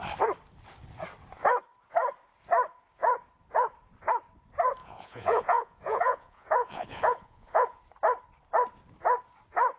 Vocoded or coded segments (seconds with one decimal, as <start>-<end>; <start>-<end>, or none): 4.8-7.8